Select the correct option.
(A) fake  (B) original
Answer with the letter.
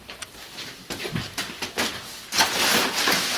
B